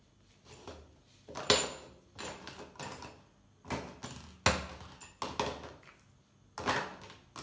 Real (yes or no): yes